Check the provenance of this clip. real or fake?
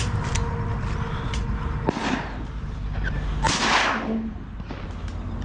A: real